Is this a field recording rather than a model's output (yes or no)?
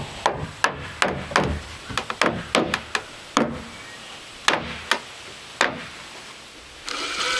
yes